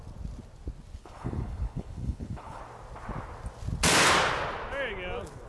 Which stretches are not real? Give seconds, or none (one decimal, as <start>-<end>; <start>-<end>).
1.0-2.6